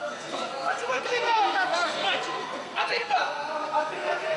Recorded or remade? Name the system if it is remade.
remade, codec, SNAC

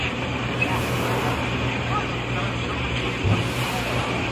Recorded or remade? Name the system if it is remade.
recorded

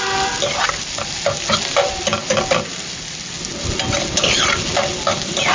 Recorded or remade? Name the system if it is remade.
recorded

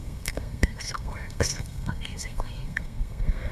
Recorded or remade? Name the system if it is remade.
remade, codec, SNAC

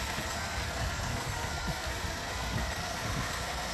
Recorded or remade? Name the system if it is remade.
remade, codec, SNAC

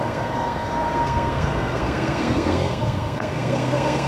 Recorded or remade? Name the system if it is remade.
remade, codec, SNAC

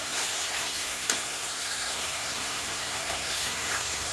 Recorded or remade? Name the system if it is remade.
remade, codec, SNAC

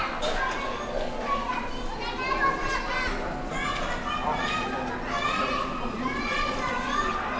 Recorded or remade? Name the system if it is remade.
recorded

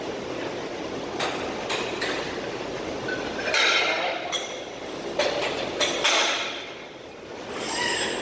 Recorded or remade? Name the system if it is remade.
recorded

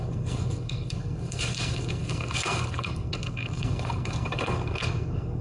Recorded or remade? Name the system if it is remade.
remade, codec, SNAC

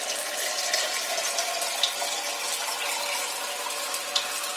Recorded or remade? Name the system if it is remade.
recorded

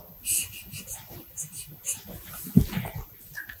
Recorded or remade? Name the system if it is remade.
recorded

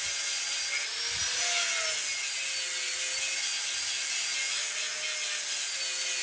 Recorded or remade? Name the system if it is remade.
recorded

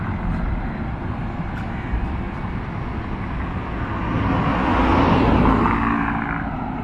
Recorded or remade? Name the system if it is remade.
recorded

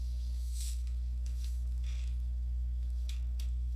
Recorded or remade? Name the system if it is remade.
remade, codec, SNAC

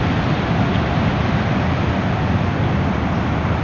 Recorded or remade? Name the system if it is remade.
recorded